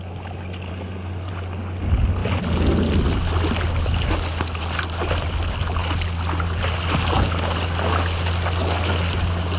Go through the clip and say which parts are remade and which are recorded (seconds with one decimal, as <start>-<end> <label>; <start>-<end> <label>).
0.0-0.7 recorded; 0.7-1.3 remade; 1.3-9.6 recorded